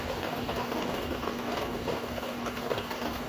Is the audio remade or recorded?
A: remade